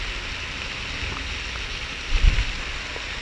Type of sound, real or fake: real